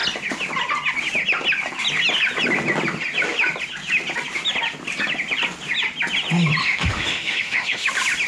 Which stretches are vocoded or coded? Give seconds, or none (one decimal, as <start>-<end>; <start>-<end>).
6.6-7.9